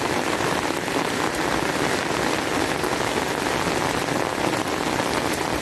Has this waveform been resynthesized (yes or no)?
no